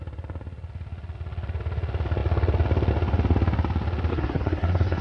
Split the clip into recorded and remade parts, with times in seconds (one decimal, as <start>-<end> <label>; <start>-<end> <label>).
0.0-4.1 recorded; 4.1-5.0 remade